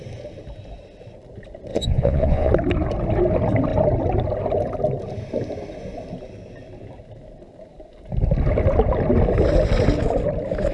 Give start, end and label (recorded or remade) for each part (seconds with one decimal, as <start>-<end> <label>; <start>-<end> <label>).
0.0-1.7 recorded; 1.7-2.5 remade; 2.5-10.7 recorded